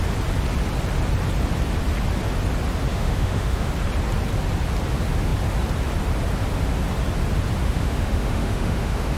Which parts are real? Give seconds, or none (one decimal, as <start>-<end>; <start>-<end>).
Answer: 0.0-2.9; 3.7-7.6